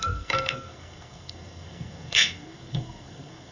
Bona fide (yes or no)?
no